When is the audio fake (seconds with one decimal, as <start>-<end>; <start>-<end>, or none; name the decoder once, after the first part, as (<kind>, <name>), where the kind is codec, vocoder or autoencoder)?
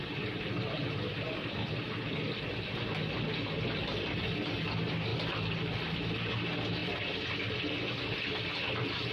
5.1-6.0 (vocoder, BigVGAN v2); 6.8-7.6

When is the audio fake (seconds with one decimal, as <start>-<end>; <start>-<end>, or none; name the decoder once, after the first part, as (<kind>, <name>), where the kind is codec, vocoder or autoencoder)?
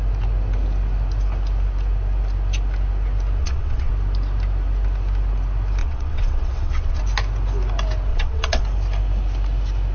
3.4-3.9 (vocoder, WaveNeXt); 5.8-7.0; 8.1-8.6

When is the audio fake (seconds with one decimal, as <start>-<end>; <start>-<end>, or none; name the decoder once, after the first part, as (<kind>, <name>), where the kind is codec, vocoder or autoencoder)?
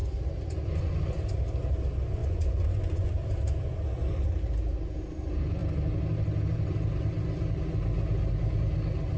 2.2-3.1 (vocoder, Vocos)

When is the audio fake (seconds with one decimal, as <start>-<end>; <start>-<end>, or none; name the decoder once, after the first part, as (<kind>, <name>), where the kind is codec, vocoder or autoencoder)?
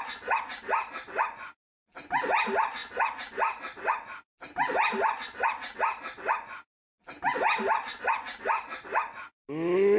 none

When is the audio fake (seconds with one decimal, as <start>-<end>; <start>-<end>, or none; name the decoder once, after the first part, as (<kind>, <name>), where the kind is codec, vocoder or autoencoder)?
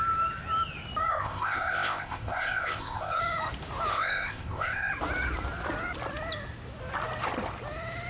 1.1-3.2 (codec, ZipCodec); 3.9-4.9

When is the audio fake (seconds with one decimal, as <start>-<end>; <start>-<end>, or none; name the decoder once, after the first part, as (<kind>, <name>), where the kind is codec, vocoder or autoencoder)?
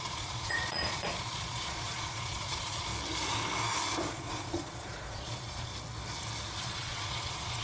0.0-2.9 (vocoder, Vocos); 4.1-5.7; 6.6-7.6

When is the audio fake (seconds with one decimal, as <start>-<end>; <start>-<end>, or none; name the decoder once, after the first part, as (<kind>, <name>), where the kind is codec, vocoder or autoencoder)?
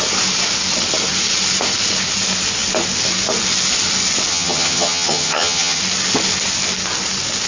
4.3-5.8 (vocoder, HiFi-GAN)